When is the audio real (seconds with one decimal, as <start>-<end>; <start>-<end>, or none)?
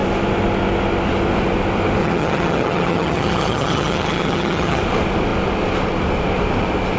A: 0.0-2.0; 4.8-7.0